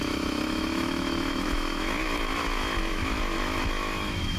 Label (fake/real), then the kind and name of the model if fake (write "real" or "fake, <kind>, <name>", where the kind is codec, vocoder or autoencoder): fake, autoencoder, DAC-VAE